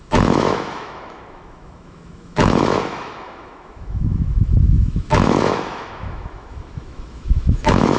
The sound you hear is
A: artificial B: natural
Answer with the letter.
A